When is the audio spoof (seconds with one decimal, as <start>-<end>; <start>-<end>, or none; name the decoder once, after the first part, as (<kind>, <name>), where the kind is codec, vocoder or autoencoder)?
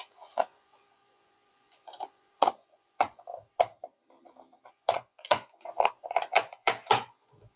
0.0-3.3 (vocoder, Vocos); 4.7-7.6